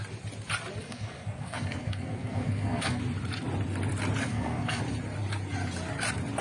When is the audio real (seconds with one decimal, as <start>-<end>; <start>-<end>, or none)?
0.0-0.8; 3.0-4.2; 4.8-6.4